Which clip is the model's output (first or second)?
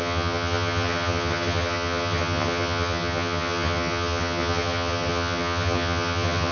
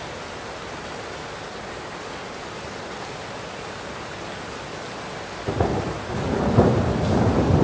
first